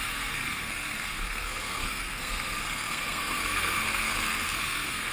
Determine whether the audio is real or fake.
fake